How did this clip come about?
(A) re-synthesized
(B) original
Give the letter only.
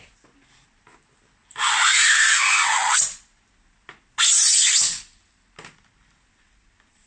B